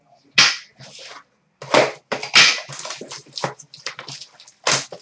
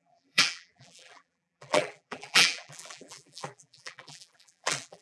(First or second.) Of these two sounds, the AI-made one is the second